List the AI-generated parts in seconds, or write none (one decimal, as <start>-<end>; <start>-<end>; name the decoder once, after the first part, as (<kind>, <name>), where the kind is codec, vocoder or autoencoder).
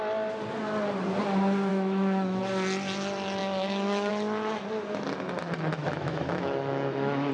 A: 1.7-2.4 (autoencoder, DAC-VAE); 3.4-4.1; 5.8-7.3